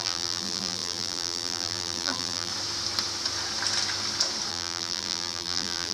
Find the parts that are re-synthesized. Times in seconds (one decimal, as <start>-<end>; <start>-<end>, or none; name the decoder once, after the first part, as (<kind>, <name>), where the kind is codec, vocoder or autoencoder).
0.0-2.5 (vocoder, BigVGAN v2); 4.5-5.9